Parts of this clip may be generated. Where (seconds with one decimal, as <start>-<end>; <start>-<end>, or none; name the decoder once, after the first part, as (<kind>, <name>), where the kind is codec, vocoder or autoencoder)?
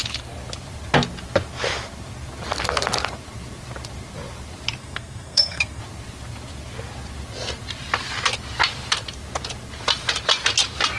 4.8-5.8 (codec, SNAC)